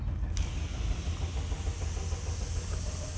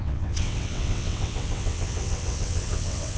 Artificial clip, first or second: second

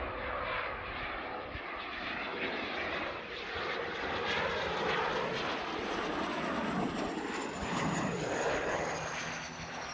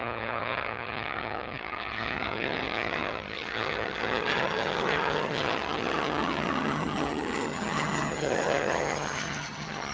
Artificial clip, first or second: second